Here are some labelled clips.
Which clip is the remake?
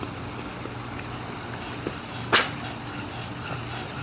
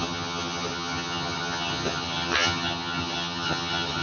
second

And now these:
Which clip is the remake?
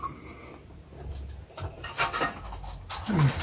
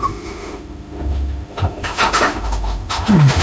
second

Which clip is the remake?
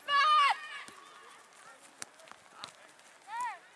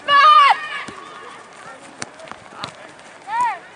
second